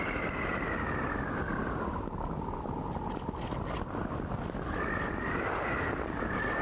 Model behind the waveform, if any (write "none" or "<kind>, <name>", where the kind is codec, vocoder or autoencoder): none